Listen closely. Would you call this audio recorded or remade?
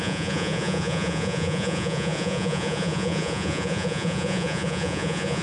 remade